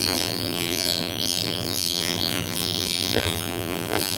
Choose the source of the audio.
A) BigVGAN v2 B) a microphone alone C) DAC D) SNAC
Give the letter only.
A